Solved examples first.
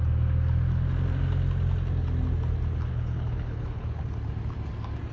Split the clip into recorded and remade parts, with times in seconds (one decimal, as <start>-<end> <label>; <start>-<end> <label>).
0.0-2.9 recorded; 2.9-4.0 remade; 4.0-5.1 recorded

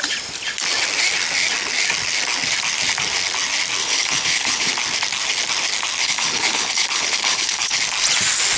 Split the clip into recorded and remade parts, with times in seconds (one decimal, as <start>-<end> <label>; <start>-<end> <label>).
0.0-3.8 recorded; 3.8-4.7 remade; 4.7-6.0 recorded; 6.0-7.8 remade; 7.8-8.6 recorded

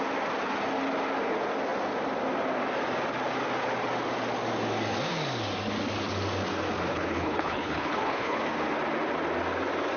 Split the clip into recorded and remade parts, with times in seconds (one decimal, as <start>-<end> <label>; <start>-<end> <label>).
0.0-6.9 recorded; 6.9-8.4 remade; 8.4-10.0 recorded

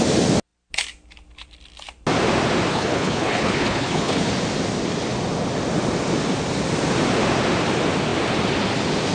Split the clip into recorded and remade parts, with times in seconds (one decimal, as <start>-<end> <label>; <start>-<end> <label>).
0.0-2.7 recorded; 2.7-4.3 remade; 4.3-9.1 recorded